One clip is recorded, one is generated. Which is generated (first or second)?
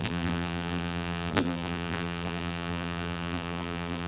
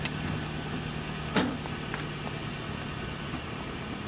first